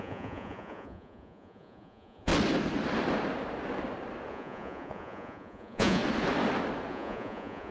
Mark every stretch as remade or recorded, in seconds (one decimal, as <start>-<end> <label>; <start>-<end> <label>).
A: 0.0-2.3 remade; 2.3-4.3 recorded; 4.3-6.0 remade; 6.0-6.9 recorded; 6.9-7.7 remade

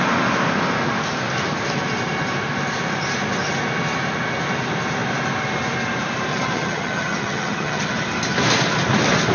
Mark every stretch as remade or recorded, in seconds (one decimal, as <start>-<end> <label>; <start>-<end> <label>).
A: 0.0-6.3 recorded; 6.3-7.9 remade; 7.9-9.3 recorded

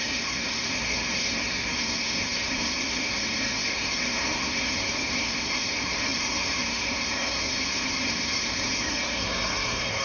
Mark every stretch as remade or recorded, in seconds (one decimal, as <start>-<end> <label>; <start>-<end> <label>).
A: 0.0-10.0 remade